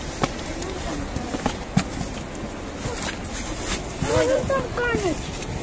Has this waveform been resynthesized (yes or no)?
no